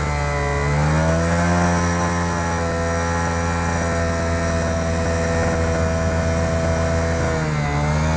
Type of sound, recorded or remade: recorded